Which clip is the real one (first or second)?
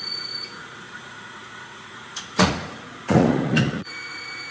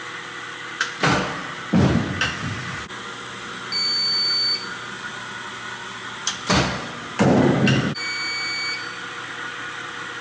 second